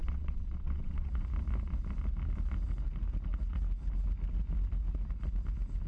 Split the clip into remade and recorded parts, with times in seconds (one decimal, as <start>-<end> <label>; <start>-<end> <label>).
0.0-1.1 remade; 1.1-5.9 recorded